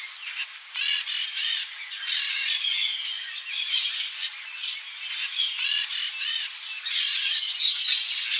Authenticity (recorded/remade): recorded